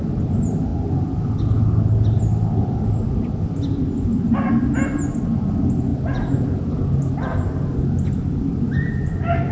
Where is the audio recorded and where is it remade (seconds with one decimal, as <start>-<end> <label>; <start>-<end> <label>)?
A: 0.0-9.5 recorded